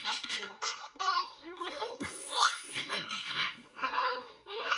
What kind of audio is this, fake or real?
fake